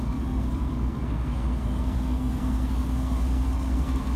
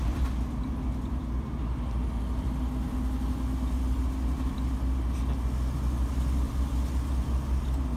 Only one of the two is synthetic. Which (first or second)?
first